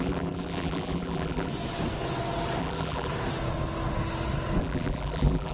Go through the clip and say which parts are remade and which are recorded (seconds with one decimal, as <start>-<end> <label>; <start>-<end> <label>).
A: 0.0-1.5 remade; 1.5-2.6 recorded; 2.6-3.1 remade; 3.1-4.6 recorded; 4.6-5.5 remade